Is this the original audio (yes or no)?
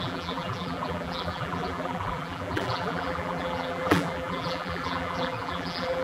no